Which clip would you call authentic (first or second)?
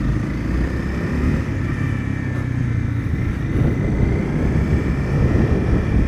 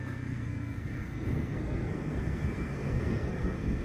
first